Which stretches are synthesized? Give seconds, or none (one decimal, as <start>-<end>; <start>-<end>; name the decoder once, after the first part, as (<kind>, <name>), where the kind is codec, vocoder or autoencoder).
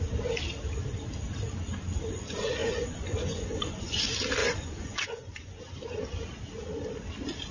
2.6-4.0 (vocoder, Vocos); 4.4-5.6